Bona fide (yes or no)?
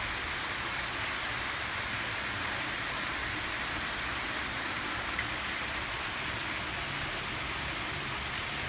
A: yes